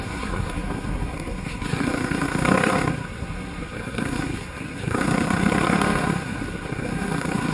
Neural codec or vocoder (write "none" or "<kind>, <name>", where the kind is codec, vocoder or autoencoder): codec, SNAC